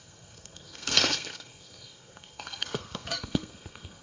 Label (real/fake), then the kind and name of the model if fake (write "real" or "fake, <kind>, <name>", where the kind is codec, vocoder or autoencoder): fake, codec, SNAC